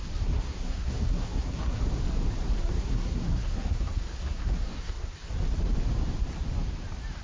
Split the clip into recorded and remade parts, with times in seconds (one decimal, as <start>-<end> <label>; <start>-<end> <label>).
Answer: 0.0-1.8 remade; 1.8-2.6 recorded; 2.6-5.3 remade; 5.3-7.2 recorded